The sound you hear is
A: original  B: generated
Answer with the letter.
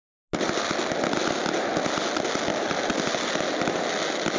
A